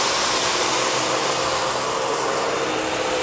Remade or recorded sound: recorded